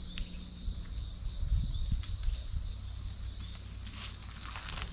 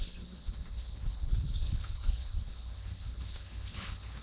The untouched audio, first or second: first